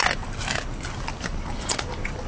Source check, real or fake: real